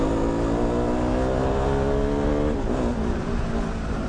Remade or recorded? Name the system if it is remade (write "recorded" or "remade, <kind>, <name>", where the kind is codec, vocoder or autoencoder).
recorded